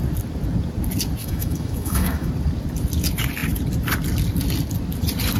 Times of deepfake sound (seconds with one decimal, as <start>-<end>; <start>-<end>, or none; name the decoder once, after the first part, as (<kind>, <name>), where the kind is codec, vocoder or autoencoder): 1.2-2.3 (autoencoder, DAC-VAE)